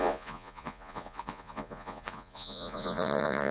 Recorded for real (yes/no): no